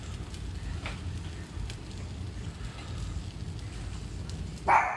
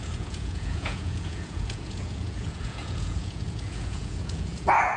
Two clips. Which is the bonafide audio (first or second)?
first